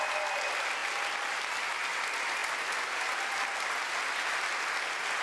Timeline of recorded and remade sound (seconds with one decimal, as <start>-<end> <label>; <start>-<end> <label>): 0.0-5.2 recorded